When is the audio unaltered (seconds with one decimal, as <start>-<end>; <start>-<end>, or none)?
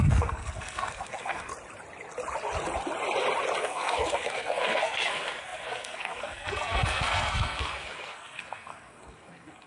1.5-3.6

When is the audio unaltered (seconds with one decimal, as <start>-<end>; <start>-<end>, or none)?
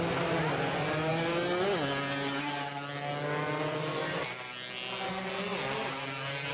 0.0-6.5